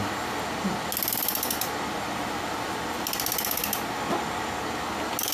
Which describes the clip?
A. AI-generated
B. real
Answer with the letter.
B